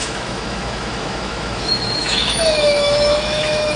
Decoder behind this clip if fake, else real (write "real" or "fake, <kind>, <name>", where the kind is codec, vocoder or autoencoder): fake, autoencoder, DAC-VAE